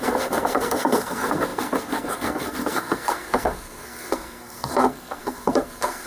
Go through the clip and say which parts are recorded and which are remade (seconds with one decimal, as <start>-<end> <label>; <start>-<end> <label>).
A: 0.0-6.1 remade